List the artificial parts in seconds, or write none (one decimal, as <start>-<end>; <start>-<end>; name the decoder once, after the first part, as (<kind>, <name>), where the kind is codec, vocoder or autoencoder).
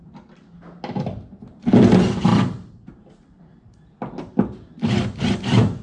none